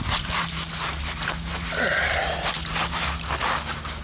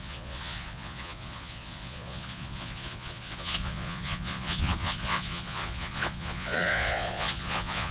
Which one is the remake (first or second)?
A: second